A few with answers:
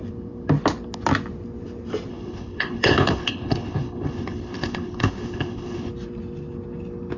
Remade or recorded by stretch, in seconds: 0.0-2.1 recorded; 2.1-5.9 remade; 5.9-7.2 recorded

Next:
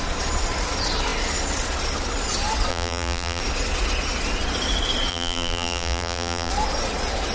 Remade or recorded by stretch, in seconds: 0.0-2.7 recorded; 2.7-3.4 remade; 3.4-5.1 recorded; 5.1-6.5 remade; 6.5-7.3 recorded